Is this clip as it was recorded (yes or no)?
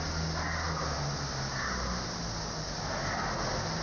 yes